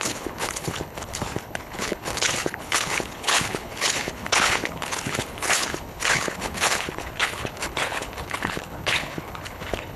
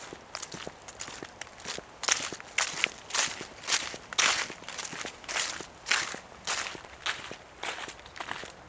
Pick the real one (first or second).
second